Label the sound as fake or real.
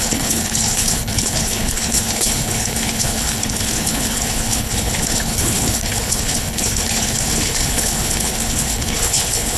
fake